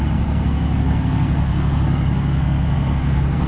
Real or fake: fake